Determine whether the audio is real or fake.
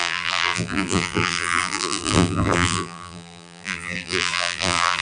fake